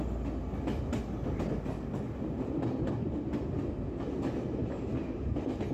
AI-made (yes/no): no